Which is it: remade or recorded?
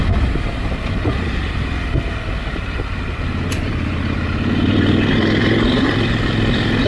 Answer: remade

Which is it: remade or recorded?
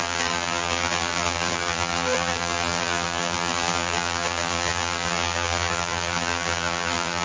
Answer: remade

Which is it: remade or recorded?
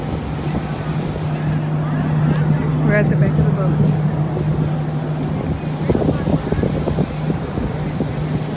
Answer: recorded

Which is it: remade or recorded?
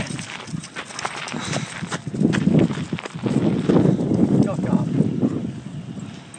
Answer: recorded